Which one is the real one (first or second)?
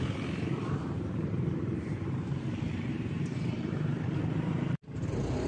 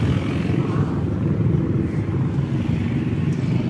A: second